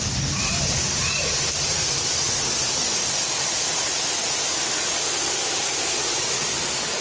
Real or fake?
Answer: real